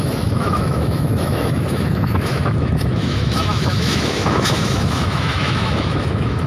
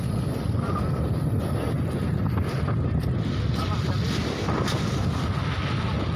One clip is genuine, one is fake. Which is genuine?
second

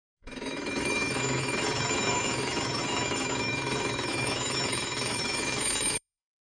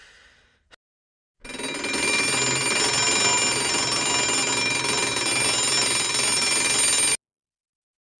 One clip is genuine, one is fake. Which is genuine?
second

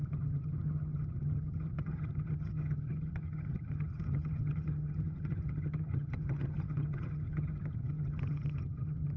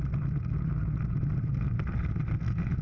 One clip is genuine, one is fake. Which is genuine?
second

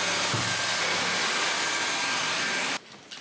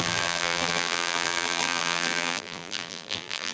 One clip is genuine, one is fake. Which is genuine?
first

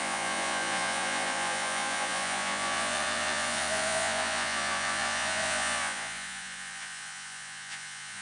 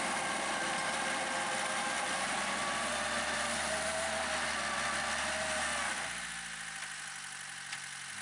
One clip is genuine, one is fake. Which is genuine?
second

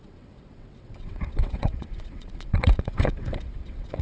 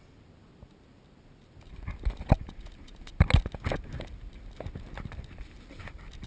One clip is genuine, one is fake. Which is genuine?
second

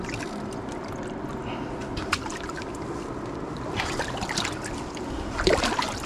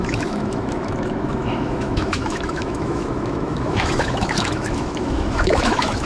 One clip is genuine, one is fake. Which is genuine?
first